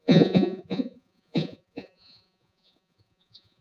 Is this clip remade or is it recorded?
remade